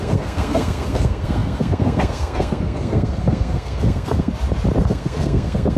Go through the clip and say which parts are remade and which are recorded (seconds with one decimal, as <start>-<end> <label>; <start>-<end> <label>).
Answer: 0.0-4.3 remade; 4.3-4.8 recorded; 4.8-5.8 remade